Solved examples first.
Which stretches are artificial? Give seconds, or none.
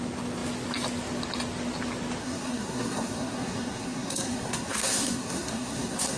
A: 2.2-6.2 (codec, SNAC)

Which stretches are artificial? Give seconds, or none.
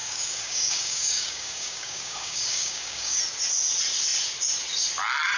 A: 0.0-3.2 (codec, DAC)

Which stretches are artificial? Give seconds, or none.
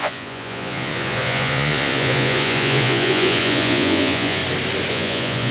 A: 0.0-4.4 (vocoder, Vocos); 4.9-5.5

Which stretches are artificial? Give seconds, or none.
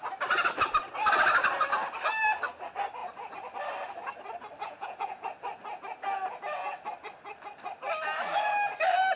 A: 4.6-5.3 (vocoder, Vocos)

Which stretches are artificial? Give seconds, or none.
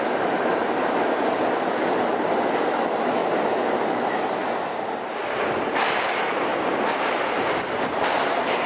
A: none